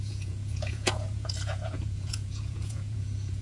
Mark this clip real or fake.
fake